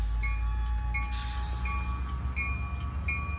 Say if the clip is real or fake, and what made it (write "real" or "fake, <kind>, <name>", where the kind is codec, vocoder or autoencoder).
real